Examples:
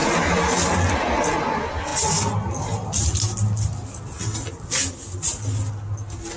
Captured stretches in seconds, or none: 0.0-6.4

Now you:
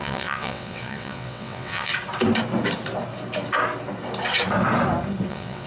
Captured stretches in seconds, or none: 1.9-5.3

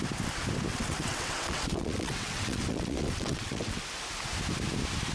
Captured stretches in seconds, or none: 0.0-0.7; 3.8-5.1

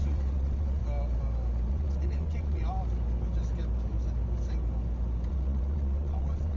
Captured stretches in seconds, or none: 0.8-1.7; 2.6-5.3

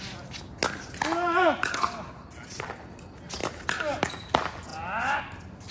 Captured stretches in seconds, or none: 0.0-5.7